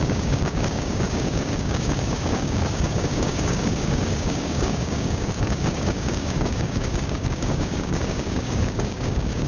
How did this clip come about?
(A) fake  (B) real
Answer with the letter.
A